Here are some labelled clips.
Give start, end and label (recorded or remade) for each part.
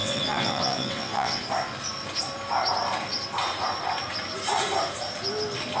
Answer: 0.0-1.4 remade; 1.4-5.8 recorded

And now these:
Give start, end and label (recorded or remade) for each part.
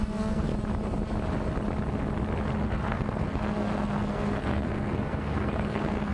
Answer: 0.0-0.5 remade; 0.5-2.6 recorded; 2.6-6.1 remade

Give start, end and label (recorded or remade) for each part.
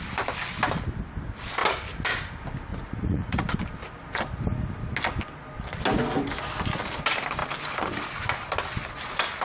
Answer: 0.0-2.7 recorded; 2.7-3.4 remade; 3.4-9.4 recorded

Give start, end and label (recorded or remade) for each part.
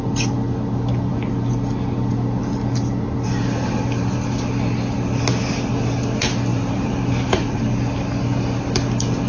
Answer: 0.0-6.5 recorded; 6.5-7.6 remade; 7.6-9.3 recorded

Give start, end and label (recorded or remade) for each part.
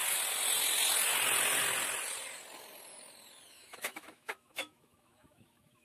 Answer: 0.0-3.5 recorded; 3.5-5.8 remade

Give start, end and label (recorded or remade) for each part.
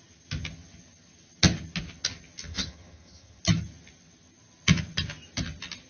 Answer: 0.0-2.5 recorded; 2.5-3.4 remade; 3.4-5.9 recorded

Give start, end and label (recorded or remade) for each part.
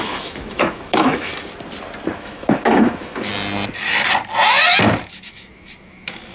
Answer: 0.0-1.3 remade; 1.3-2.2 recorded; 2.2-3.3 remade; 3.3-5.1 recorded; 5.1-6.3 remade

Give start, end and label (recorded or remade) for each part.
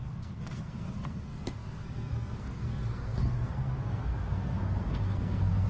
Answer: 0.0-5.7 remade